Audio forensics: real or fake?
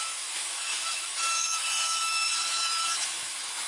fake